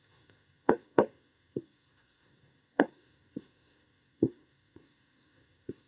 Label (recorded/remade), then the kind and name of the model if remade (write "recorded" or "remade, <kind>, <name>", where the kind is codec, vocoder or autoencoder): remade, codec, SNAC